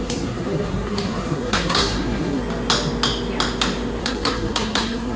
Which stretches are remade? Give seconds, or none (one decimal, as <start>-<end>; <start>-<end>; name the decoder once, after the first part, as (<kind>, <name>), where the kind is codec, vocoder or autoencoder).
0.0-2.4 (codec, SNAC); 4.0-5.2